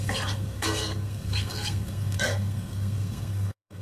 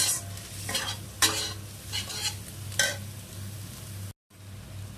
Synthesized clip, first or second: first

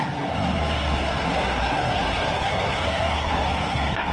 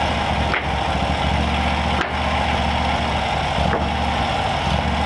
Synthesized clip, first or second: first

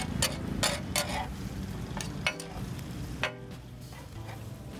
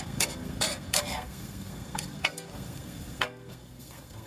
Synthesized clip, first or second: second